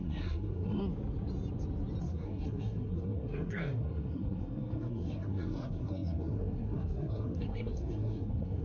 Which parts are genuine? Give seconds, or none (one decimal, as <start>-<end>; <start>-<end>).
0.8-2.0